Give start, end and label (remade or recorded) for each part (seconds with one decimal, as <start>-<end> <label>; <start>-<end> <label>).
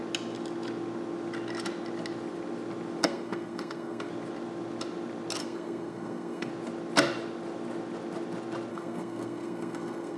0.0-3.0 recorded; 3.0-4.1 remade; 4.1-5.4 recorded; 5.4-6.5 remade; 6.5-8.7 recorded; 8.7-10.2 remade